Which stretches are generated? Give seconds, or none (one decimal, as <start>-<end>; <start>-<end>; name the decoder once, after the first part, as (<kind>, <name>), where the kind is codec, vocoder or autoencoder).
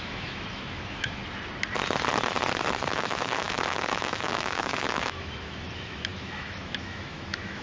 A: 0.0-1.2 (autoencoder, DAC-VAE); 2.6-7.6